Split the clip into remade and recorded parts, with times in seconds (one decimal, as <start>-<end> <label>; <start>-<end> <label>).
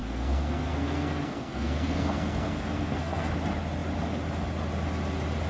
0.0-3.3 remade; 3.3-5.5 recorded